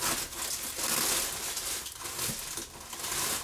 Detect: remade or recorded recorded